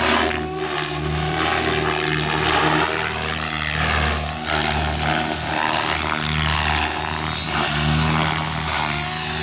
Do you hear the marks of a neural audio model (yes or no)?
no